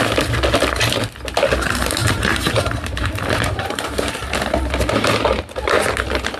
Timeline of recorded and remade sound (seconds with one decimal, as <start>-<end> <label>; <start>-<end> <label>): 0.0-2.0 recorded; 2.0-4.3 remade; 4.3-6.4 recorded